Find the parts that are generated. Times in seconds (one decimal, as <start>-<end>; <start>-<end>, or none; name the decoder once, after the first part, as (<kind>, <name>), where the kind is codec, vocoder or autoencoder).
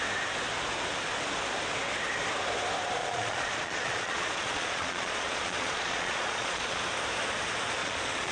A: 3.0-6.8 (vocoder, Vocos); 7.8-8.3